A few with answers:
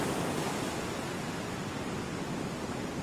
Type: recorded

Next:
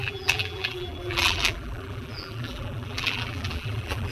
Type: remade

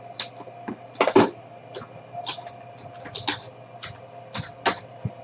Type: recorded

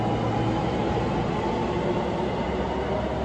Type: recorded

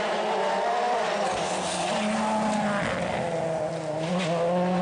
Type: recorded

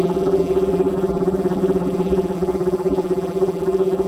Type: remade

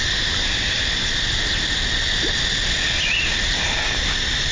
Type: recorded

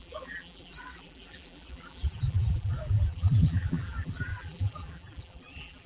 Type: remade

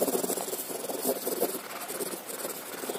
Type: remade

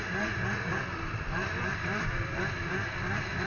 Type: remade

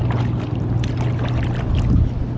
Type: recorded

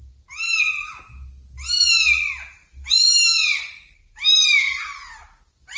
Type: recorded